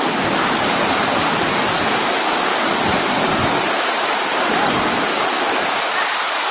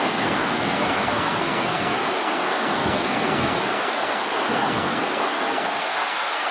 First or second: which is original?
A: first